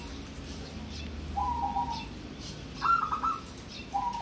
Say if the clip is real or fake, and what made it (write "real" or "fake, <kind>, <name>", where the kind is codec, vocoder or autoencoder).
real